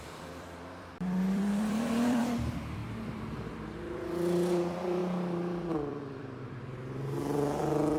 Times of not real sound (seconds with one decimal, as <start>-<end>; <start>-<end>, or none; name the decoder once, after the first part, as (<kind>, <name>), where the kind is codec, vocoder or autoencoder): 0.0-8.0 (vocoder, BigVGAN v2)